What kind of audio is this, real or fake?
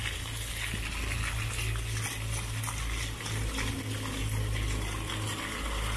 real